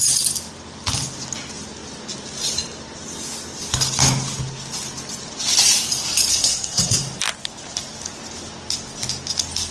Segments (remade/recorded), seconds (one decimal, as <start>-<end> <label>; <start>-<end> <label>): 0.0-6.3 recorded; 6.3-7.0 remade; 7.0-9.7 recorded